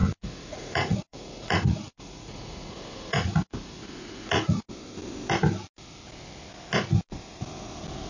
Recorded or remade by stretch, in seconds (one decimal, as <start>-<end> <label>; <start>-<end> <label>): 0.0-4.7 remade; 4.7-8.1 recorded